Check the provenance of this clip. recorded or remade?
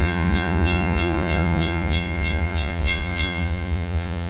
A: remade